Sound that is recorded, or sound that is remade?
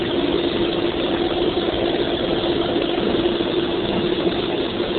recorded